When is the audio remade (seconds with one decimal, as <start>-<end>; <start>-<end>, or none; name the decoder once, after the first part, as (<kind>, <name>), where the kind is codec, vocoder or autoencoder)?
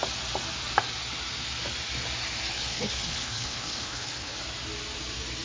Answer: 2.5-4.4 (codec, HILCodec)